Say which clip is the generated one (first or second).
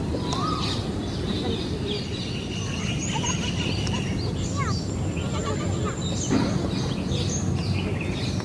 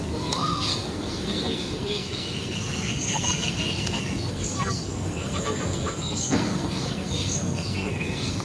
second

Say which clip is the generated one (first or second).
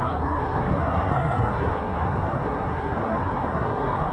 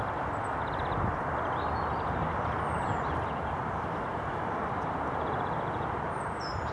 first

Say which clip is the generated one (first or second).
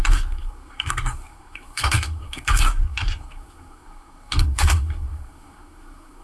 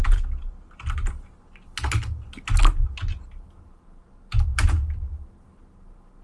first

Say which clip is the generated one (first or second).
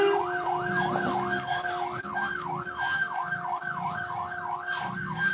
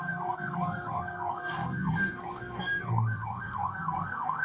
second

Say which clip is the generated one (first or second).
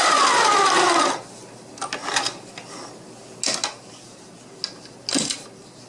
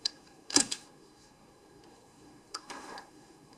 second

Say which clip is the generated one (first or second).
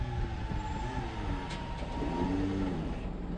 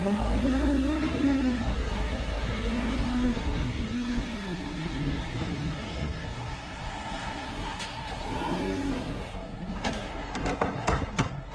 second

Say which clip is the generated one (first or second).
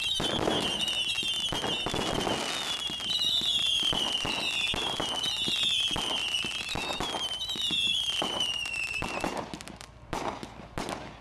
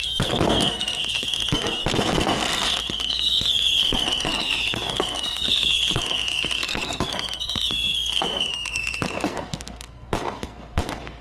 second